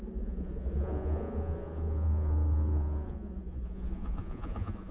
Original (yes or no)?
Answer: no